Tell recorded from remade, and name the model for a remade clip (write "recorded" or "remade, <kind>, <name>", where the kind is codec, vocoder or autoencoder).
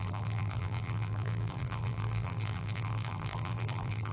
remade, vocoder, BigVGAN v2